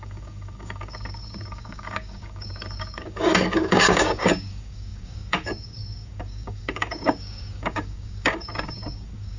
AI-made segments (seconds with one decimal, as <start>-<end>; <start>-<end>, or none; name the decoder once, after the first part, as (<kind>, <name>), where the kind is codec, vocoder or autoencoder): 0.0-9.4 (codec, DAC)